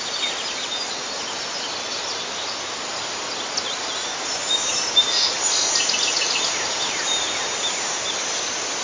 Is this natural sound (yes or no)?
yes